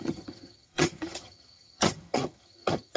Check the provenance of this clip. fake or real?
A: fake